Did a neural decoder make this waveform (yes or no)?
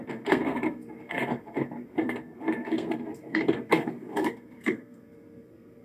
yes